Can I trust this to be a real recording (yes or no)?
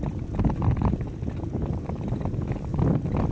yes